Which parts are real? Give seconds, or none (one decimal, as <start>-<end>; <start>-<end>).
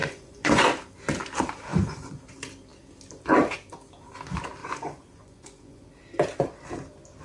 0.6-1.7; 2.2-4.6; 5.9-7.2